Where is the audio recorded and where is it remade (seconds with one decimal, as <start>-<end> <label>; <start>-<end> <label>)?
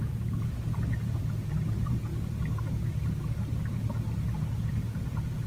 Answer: 0.0-2.1 remade; 2.1-5.1 recorded; 5.1-5.5 remade